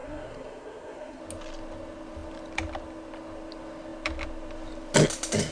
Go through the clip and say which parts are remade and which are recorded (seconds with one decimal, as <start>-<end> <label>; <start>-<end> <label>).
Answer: 0.0-1.2 remade; 1.2-5.5 recorded